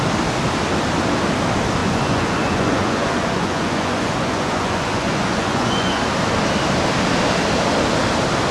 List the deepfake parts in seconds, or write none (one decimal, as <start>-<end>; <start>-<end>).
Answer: 1.8-6.0